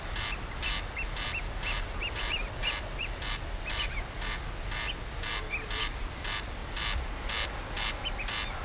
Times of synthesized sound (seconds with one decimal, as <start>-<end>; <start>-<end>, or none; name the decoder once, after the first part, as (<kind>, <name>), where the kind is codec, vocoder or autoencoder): none